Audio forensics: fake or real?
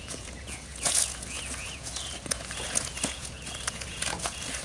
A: fake